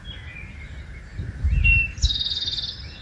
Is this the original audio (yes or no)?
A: yes